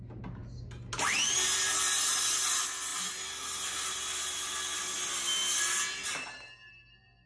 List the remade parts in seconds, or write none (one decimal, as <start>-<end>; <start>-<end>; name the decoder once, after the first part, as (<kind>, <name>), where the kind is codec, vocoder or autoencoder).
none